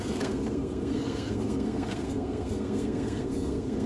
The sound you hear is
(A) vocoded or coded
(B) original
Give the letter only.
A